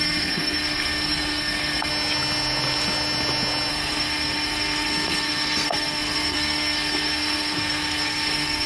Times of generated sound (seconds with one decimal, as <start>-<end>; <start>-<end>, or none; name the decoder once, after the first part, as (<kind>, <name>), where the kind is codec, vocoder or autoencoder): 0.0-1.9 (codec, SNAC); 3.7-8.7